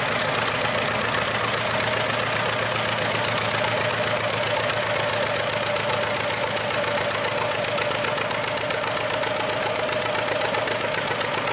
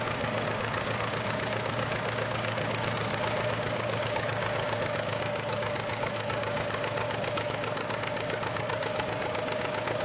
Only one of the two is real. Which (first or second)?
first